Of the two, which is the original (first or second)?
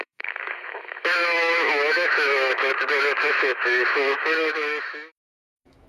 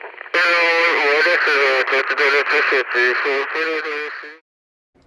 second